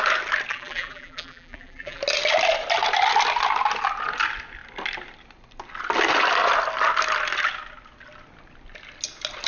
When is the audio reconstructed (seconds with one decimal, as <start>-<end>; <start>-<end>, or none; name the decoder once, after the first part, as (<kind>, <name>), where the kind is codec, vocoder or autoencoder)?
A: 0.5-2.0 (vocoder, BigVGAN v2)